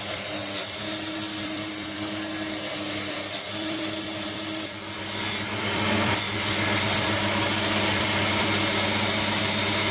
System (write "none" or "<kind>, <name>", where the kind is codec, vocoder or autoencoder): vocoder, BigVGAN v2